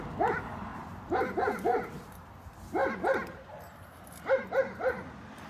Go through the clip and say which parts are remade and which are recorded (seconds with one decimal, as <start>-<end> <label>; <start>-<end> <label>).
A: 0.0-0.7 recorded; 0.7-2.3 remade; 2.3-2.8 recorded; 2.8-4.4 remade; 4.4-5.5 recorded